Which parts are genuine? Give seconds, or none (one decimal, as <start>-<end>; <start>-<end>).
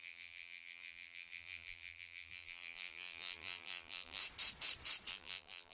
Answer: 4.2-5.1